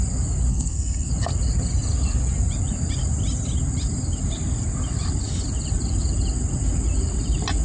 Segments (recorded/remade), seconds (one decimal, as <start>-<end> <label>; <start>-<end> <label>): 0.0-0.5 recorded; 0.5-1.1 remade; 1.1-7.6 recorded